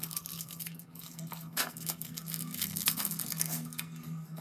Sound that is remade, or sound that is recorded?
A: remade